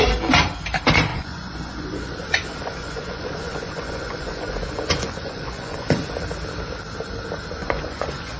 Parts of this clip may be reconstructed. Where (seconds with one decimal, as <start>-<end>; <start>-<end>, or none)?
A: 1.1-6.1; 7.6-8.4